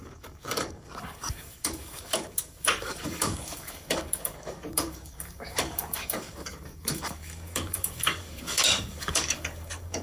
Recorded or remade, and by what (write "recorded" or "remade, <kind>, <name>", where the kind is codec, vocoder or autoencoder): remade, codec, DAC